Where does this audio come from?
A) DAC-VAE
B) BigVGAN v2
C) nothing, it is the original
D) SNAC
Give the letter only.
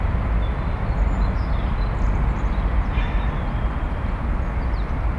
C